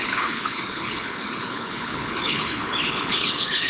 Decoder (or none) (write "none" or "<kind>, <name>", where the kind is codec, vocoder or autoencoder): codec, HILCodec